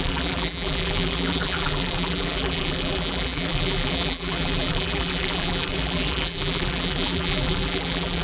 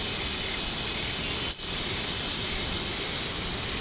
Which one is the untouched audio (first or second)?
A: second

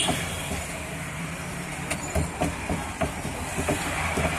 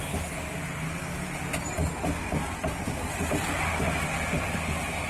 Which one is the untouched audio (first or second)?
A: second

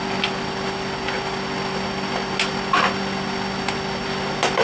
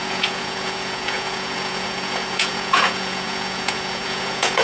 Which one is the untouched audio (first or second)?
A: first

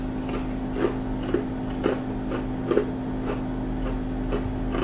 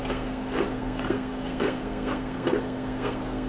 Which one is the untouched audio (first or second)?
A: first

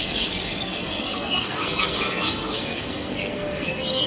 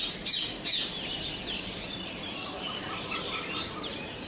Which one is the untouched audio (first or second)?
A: second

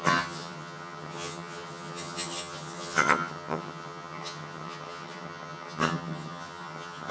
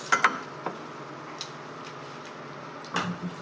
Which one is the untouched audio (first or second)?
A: second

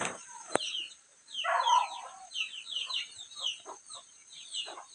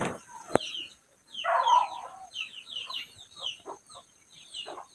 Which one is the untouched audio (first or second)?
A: second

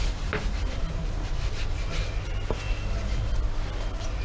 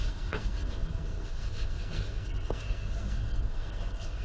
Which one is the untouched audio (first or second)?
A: first